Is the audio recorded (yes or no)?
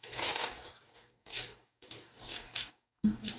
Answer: no